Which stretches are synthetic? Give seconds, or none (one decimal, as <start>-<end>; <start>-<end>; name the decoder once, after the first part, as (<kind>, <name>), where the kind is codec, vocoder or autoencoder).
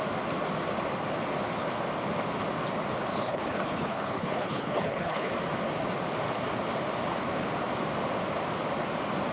3.1-5.3 (codec, HILCodec)